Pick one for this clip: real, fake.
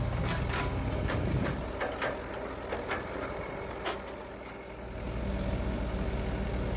real